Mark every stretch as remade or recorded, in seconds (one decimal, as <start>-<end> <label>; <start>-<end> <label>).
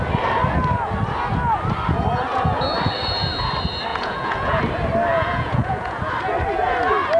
0.0-3.9 recorded; 3.9-4.6 remade; 4.6-5.1 recorded; 5.1-6.1 remade; 6.1-7.2 recorded